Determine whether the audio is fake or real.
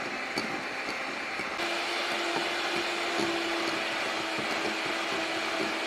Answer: real